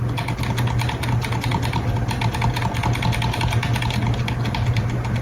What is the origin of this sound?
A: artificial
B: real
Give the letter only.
B